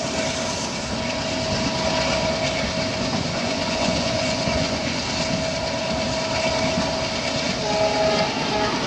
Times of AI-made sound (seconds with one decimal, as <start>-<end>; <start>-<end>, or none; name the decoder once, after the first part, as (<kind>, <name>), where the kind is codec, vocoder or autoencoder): 2.9-5.0 (vocoder, Vocos)